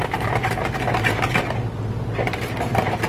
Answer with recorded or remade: remade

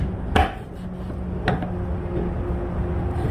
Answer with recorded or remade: recorded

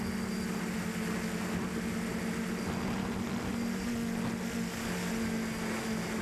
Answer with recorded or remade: recorded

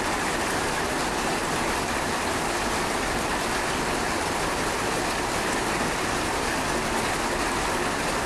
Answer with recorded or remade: recorded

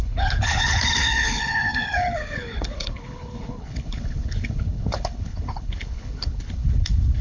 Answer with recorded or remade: remade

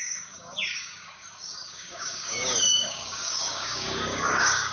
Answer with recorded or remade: remade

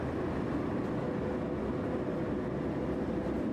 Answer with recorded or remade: recorded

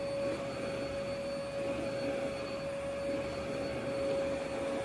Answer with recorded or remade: recorded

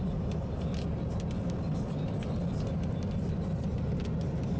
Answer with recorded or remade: recorded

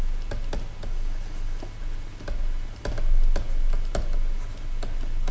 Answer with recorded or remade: recorded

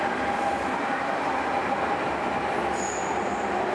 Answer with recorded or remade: recorded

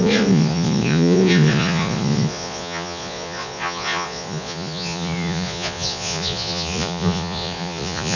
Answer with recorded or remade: remade